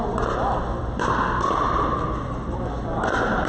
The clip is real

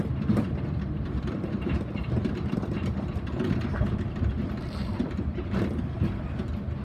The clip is fake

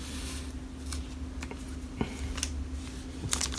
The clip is real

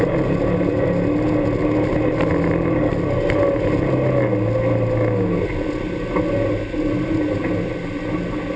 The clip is real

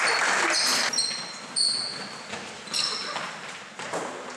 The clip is real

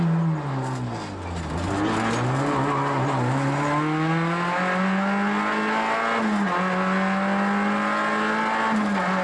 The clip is real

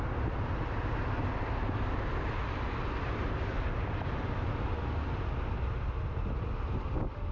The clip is real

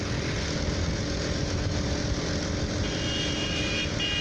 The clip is real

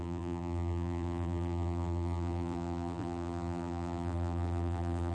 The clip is fake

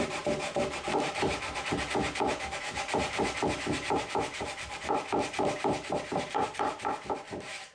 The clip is fake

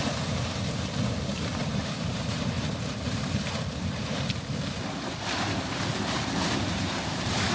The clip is fake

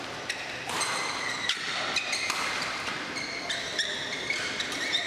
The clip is fake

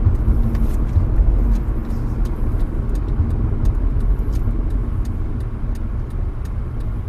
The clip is real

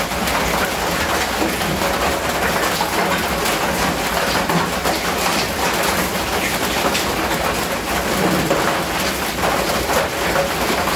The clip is real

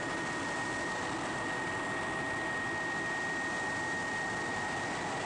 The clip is real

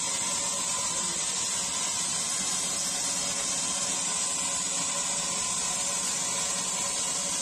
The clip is real